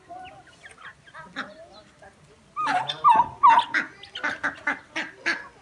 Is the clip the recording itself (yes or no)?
yes